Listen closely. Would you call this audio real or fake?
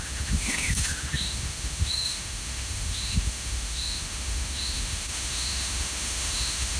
fake